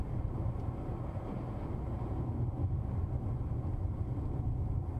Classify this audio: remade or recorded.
recorded